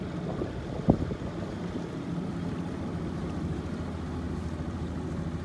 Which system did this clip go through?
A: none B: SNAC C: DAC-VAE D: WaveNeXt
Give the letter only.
A